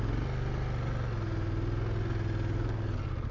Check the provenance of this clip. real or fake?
real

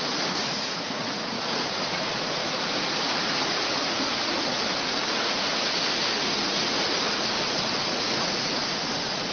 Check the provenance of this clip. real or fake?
fake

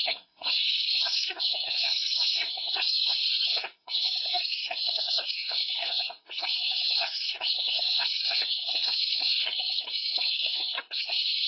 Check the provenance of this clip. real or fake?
fake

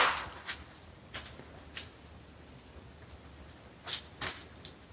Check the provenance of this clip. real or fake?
real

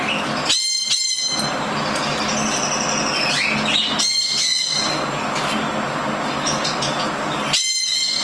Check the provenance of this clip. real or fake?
real